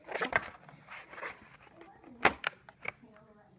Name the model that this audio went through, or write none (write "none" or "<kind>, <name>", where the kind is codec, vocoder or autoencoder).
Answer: none